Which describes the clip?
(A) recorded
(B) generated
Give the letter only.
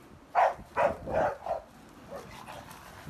A